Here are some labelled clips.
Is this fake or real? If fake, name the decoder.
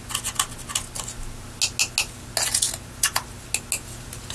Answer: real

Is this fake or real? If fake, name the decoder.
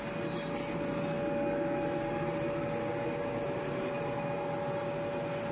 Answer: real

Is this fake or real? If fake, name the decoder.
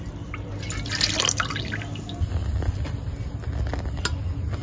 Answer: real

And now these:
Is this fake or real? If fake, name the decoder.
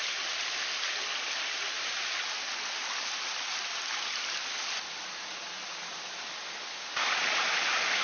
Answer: real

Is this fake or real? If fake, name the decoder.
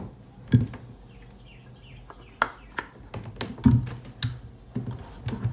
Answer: real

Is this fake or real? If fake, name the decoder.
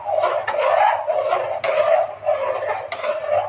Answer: real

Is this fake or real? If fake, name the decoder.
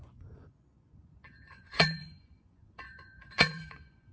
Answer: fake, vocoder, Vocos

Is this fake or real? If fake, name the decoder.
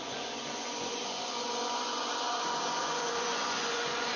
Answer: fake, vocoder, Vocos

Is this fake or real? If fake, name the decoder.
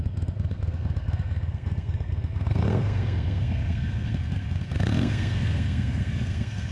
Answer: fake, codec, SNAC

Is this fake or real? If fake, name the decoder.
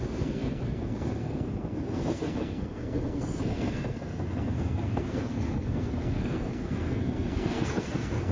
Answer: fake, codec, SNAC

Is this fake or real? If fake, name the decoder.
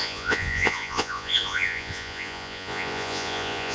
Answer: fake, vocoder, Vocos